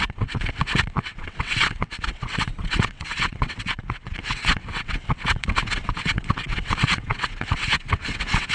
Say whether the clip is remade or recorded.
remade